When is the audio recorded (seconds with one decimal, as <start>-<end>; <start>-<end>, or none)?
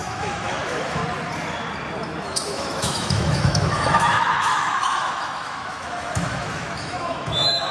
1.0-2.2